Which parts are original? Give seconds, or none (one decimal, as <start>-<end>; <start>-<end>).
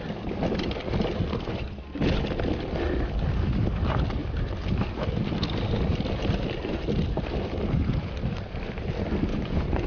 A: 0.0-9.3